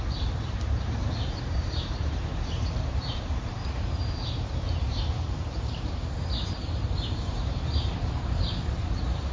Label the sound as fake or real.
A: fake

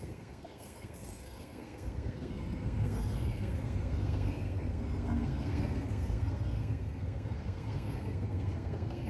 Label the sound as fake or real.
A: fake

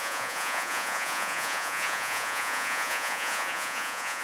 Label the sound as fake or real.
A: fake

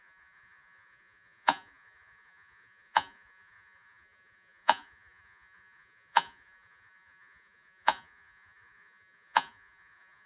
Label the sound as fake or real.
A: fake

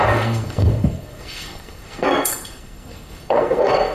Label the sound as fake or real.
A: fake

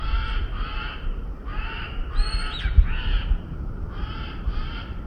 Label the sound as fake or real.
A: fake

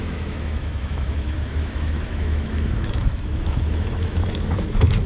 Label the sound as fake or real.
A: fake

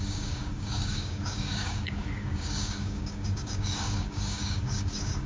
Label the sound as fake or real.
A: fake